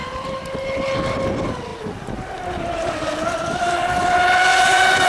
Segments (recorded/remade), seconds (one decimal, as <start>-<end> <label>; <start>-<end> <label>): 0.0-4.5 recorded; 4.5-5.1 remade